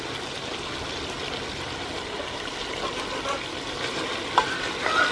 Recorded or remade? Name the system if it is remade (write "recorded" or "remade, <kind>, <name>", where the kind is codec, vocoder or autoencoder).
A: recorded